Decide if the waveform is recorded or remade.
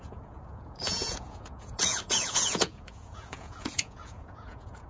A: remade